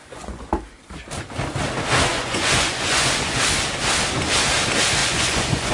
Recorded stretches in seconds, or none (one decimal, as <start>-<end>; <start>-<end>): 0.5-2.1; 3.4-5.0